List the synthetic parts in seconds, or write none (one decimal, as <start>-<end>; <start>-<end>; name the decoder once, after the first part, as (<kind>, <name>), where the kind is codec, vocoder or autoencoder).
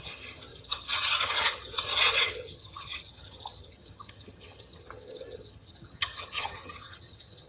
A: 0.0-7.5 (vocoder, HiFi-GAN)